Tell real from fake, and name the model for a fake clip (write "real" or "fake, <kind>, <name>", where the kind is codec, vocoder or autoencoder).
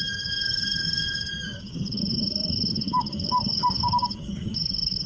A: fake, codec, DAC